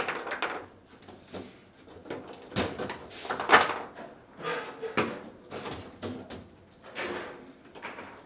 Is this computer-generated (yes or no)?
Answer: no